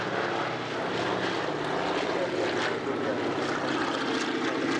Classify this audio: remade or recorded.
recorded